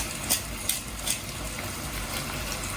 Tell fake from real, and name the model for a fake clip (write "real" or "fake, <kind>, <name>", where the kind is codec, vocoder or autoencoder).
real